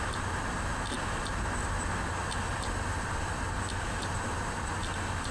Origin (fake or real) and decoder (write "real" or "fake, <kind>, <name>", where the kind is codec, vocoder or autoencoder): real